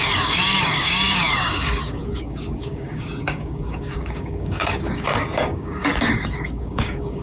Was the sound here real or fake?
fake